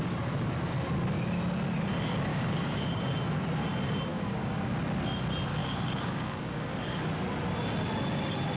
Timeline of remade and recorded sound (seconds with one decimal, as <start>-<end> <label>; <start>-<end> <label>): 0.0-2.3 recorded; 2.3-3.0 remade; 3.0-4.1 recorded; 4.1-4.7 remade; 4.7-5.6 recorded; 5.6-7.1 remade; 7.1-8.6 recorded